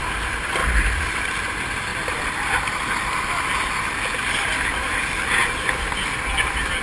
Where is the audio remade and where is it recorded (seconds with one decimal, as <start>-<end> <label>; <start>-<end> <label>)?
0.0-6.8 recorded